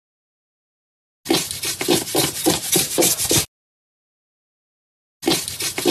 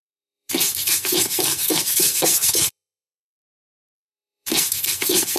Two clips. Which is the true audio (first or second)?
first